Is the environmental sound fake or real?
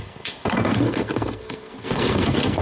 fake